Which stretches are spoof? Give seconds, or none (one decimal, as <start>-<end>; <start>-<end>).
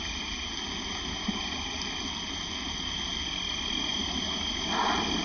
none